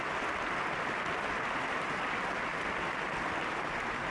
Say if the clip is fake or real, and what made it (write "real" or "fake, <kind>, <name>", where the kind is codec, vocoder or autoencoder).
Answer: real